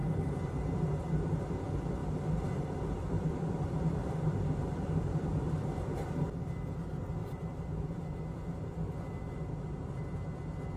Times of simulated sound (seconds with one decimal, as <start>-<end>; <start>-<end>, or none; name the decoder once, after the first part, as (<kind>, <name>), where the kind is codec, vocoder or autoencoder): 0.0-1.5 (vocoder, BigVGAN v2); 2.0-6.2; 7.2-10.0